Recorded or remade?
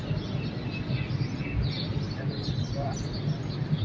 recorded